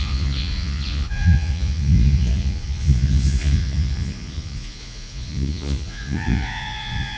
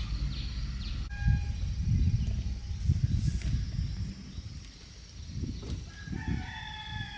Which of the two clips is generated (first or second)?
first